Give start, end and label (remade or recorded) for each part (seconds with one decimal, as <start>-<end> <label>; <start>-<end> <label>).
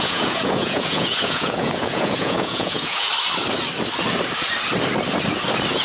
0.0-3.1 remade; 3.1-5.8 recorded